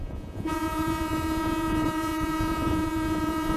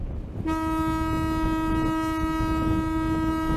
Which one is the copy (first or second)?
first